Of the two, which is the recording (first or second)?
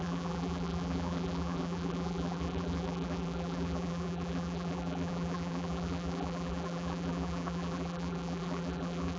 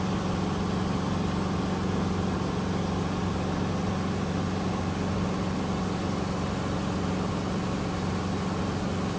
second